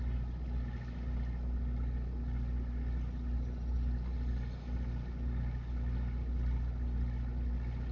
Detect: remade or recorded recorded